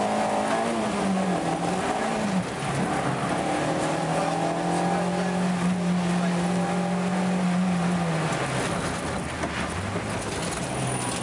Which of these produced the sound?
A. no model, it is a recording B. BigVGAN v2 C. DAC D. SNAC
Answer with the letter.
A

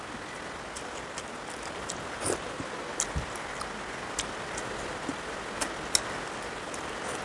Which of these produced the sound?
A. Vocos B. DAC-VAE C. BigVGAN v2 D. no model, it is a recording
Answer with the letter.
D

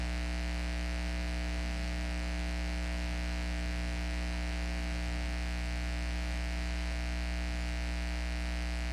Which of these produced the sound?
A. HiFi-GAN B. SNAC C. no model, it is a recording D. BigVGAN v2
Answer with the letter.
C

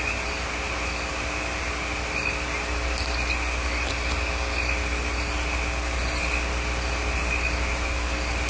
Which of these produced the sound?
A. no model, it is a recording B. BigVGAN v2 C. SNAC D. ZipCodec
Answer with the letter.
A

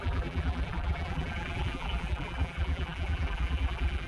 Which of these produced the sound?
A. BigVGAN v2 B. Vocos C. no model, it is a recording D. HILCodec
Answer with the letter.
A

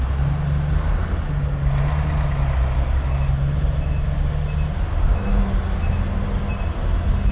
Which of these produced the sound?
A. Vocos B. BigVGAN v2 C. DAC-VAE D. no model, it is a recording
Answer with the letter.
D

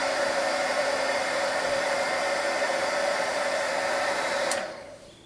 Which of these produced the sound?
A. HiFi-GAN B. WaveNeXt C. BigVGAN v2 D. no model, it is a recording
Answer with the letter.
C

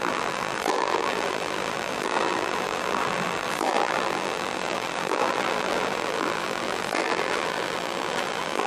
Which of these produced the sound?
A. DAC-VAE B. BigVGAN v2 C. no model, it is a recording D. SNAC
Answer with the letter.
B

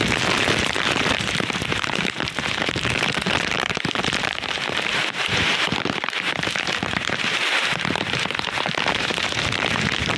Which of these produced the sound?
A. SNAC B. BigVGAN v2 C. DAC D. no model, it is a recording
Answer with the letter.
B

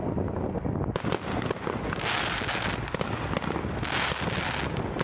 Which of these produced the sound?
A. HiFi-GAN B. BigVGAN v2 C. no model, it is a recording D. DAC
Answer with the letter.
C